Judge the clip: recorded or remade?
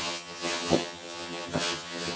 remade